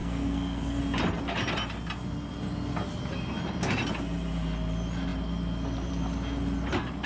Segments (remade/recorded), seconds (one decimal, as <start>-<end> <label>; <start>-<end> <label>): 0.0-0.8 remade; 0.8-7.1 recorded